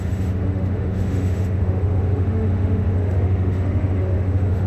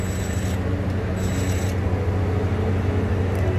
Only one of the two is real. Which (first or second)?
second